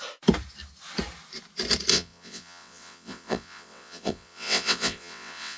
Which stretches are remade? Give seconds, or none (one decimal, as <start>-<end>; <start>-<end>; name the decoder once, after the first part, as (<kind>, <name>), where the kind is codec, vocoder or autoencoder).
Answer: 1.9-5.6 (vocoder, WaveNeXt)